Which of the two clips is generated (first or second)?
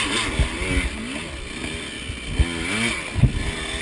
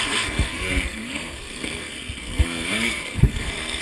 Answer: second